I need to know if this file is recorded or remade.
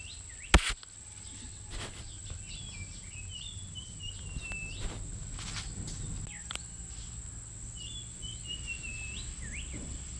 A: recorded